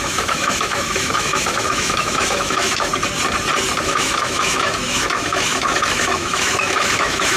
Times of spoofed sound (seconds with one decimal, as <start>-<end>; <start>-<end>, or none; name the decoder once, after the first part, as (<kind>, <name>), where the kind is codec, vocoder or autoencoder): 0.0-2.9 (autoencoder, DAC-VAE); 3.8-7.4